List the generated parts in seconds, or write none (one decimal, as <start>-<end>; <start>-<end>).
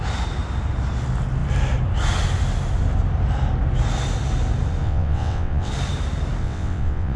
4.8-5.7; 6.4-7.2